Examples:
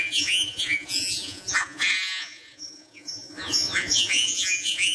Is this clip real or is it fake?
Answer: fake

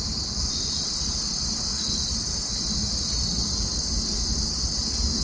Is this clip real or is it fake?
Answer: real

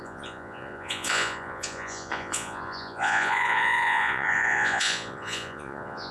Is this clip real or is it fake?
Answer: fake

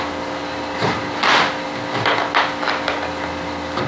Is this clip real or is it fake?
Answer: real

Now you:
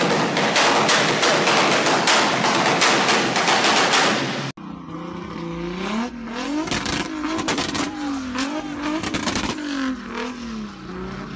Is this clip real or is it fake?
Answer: real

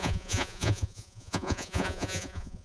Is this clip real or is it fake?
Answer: fake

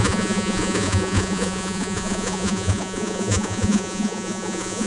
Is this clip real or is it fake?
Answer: fake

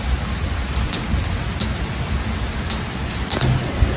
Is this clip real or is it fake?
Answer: real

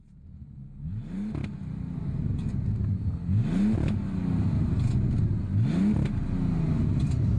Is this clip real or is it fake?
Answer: real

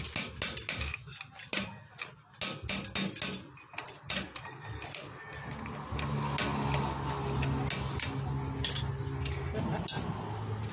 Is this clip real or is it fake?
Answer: real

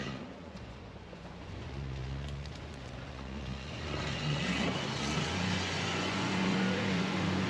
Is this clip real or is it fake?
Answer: fake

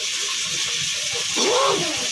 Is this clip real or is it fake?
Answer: real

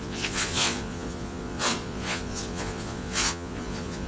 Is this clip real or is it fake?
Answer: fake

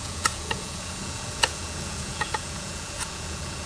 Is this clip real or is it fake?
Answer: fake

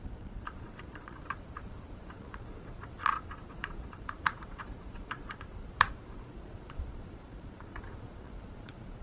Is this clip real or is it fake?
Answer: fake